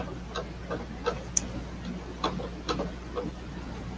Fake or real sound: real